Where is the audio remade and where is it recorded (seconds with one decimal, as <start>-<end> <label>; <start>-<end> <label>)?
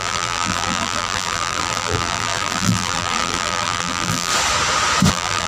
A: 0.0-4.3 remade; 4.3-5.1 recorded; 5.1-5.5 remade